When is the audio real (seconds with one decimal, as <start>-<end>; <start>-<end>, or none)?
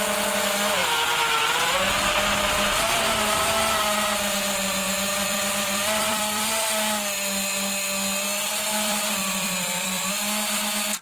0.0-5.1; 6.7-8.7; 10.1-11.0